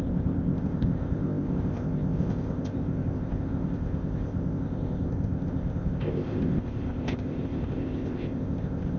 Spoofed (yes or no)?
yes